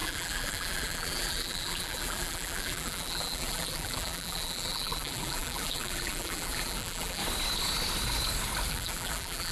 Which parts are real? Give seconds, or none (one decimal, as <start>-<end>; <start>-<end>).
7.2-8.7